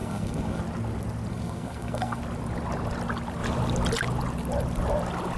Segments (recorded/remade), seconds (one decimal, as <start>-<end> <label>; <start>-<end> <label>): 0.0-0.6 remade; 0.6-1.3 recorded; 1.3-2.2 remade; 2.2-5.4 recorded